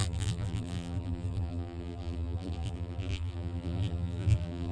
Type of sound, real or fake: fake